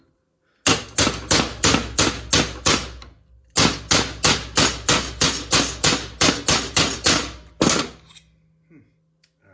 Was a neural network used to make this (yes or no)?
no